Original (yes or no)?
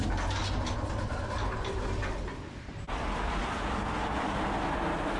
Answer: yes